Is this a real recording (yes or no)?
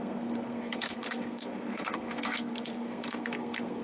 no